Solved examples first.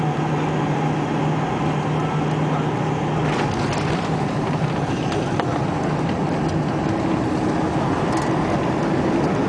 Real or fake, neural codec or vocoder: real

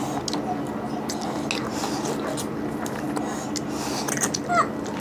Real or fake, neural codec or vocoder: real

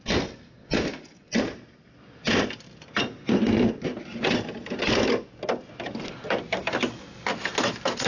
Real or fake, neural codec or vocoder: real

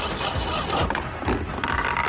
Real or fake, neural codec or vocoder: real